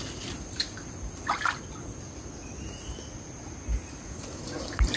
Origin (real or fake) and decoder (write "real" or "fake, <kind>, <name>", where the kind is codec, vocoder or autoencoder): real